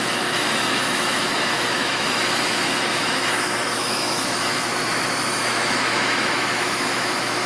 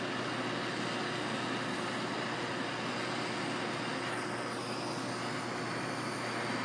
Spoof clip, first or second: first